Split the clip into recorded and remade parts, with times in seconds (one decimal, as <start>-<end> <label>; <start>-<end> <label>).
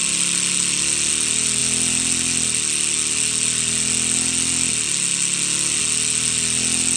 0.0-7.0 recorded